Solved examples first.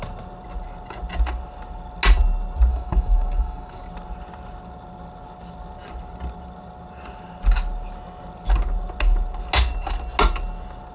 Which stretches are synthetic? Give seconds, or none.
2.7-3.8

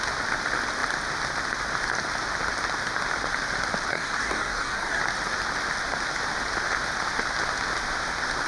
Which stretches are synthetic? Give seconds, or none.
3.9-5.0

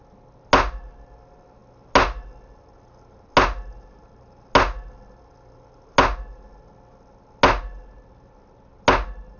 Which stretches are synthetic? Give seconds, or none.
none